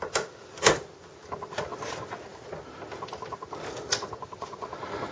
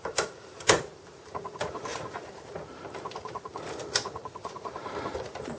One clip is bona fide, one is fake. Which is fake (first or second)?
second